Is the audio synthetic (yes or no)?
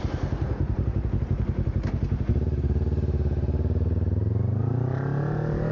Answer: yes